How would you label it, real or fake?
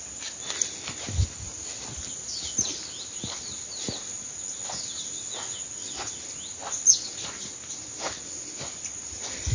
real